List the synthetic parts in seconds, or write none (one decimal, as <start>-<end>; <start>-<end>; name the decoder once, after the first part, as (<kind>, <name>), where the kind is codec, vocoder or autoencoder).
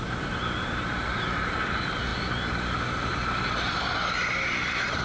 0.0-2.1 (vocoder, BigVGAN v2); 4.3-5.0